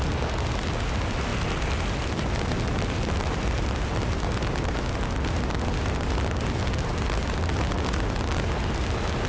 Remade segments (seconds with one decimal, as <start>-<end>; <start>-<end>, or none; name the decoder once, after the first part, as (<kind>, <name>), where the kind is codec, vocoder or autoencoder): none